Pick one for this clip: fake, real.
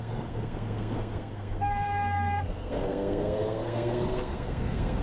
fake